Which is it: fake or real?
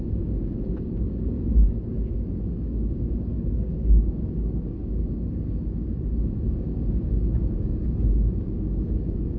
fake